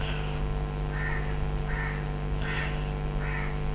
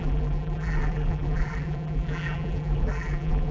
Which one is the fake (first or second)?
second